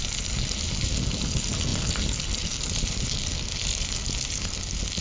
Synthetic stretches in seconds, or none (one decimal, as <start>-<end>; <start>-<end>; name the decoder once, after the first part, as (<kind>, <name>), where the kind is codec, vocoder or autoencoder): none